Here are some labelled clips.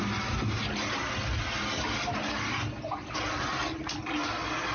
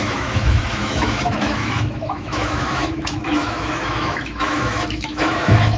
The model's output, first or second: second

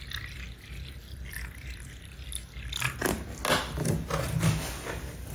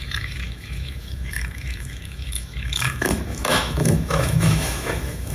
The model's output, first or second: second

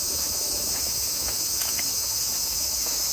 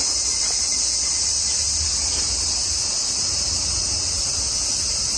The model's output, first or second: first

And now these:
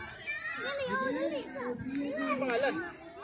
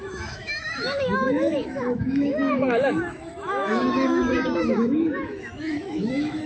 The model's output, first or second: second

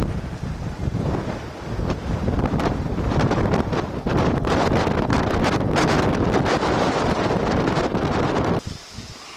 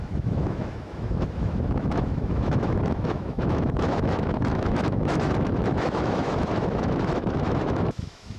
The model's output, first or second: second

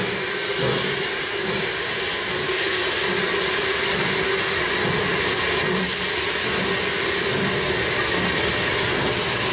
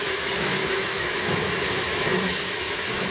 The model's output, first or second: second